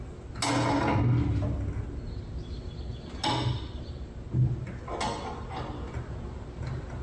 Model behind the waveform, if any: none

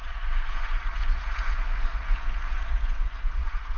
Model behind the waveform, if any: vocoder, Vocos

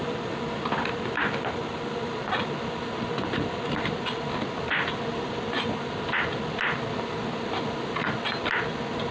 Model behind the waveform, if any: none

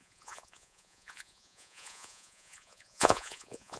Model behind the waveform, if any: vocoder, Vocos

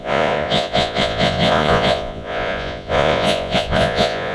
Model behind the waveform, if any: vocoder, Vocos